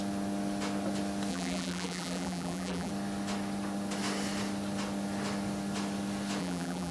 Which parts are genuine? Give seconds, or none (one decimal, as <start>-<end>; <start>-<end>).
0.0-1.3; 2.9-6.4